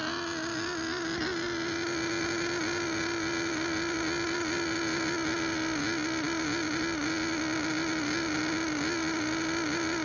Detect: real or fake real